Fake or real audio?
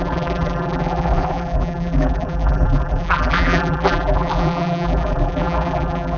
fake